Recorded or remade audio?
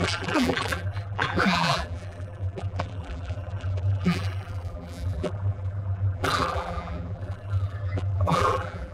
remade